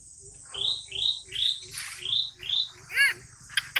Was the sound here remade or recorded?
recorded